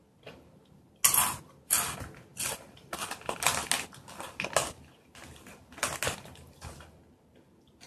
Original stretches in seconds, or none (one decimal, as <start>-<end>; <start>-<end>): 0.0-7.9